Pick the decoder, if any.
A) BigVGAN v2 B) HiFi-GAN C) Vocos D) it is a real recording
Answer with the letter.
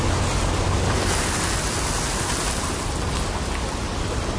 D